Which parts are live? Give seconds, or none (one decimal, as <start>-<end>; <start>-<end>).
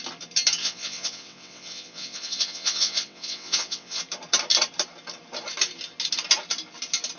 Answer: 0.0-0.6; 4.0-7.2